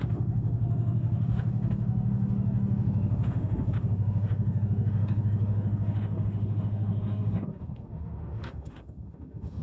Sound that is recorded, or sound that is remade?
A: remade